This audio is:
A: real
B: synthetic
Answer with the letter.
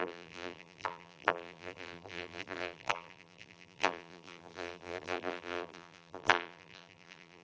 B